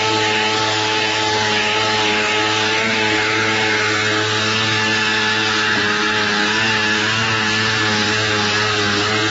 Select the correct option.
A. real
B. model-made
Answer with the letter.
A